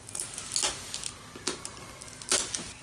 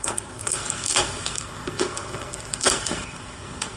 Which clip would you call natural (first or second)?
first